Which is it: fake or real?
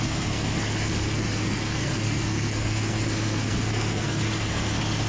fake